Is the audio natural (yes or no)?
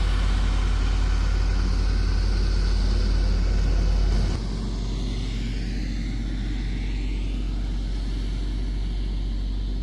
yes